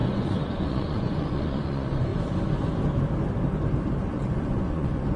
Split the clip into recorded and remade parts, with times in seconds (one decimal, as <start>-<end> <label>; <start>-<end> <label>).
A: 0.0-2.1 remade; 2.1-4.1 recorded; 4.1-5.2 remade